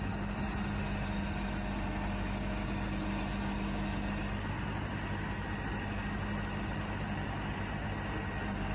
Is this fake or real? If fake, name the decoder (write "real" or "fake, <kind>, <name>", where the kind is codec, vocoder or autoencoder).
real